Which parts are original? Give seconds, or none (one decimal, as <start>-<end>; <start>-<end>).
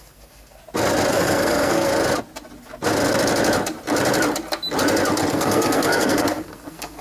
0.6-1.1; 1.9-5.3